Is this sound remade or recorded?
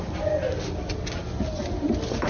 recorded